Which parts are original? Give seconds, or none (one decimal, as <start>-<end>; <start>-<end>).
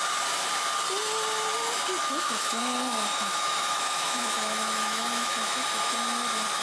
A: 0.0-2.0; 2.6-3.1; 5.9-6.6